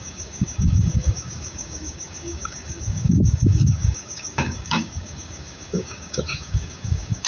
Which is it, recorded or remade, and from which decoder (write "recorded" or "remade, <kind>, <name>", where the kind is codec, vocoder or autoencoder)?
remade, codec, DAC